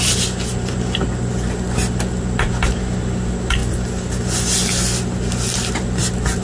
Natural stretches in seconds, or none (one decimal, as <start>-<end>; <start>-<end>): 0.0-6.4